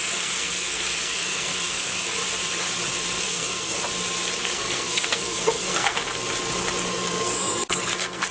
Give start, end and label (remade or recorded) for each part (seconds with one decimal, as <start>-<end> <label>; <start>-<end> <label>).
0.0-2.2 remade; 2.2-3.2 recorded; 3.2-3.8 remade; 3.8-4.4 recorded; 4.4-6.0 remade; 6.0-6.9 recorded; 6.9-8.3 remade